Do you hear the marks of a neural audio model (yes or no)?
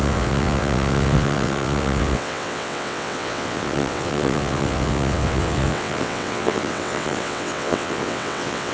yes